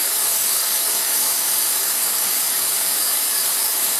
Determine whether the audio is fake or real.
fake